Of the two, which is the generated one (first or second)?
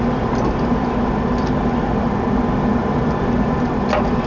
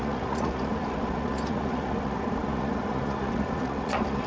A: second